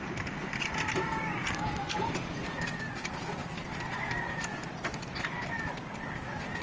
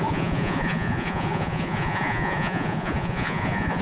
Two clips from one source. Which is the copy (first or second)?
second